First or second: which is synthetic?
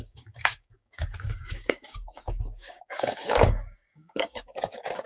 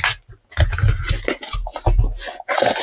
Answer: first